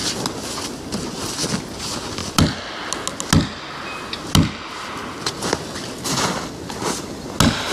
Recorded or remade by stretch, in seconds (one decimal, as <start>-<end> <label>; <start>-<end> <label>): 0.0-7.7 recorded